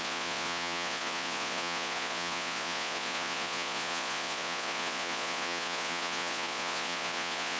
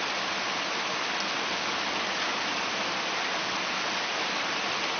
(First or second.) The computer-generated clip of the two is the first